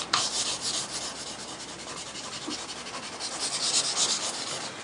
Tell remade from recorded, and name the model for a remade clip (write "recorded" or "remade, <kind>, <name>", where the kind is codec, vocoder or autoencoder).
recorded